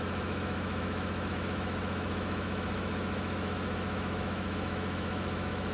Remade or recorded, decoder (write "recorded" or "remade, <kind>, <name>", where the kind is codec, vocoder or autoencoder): remade, autoencoder, DAC-VAE